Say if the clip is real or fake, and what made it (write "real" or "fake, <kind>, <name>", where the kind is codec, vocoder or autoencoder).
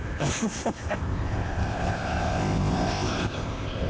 fake, codec, ZipCodec